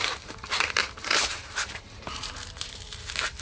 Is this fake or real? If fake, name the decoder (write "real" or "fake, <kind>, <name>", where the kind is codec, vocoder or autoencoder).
fake, vocoder, BigVGAN v2